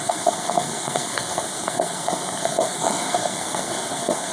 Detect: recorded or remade remade